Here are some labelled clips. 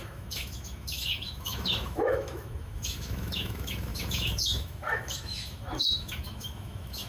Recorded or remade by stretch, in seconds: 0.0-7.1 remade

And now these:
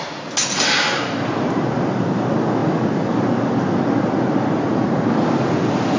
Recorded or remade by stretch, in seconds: 0.0-6.0 recorded

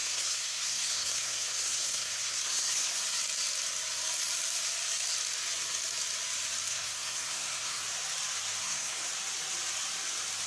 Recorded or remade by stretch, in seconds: 0.0-3.0 remade; 3.0-6.7 recorded; 6.7-7.8 remade; 7.8-8.6 recorded; 8.6-9.1 remade; 9.1-10.5 recorded

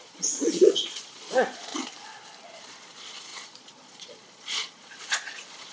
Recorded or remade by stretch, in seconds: 0.0-1.7 remade; 1.7-2.6 recorded; 2.6-5.7 remade

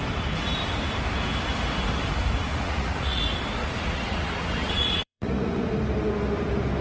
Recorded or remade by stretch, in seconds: 0.0-2.5 recorded; 2.5-3.2 remade; 3.2-3.6 recorded; 3.6-5.7 remade; 5.7-6.8 recorded